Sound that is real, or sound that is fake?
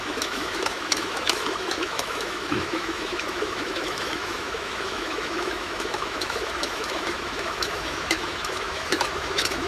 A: fake